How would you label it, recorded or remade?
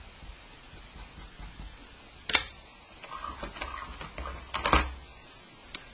recorded